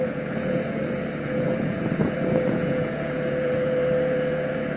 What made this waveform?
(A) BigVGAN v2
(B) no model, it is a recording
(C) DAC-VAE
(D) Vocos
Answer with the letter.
D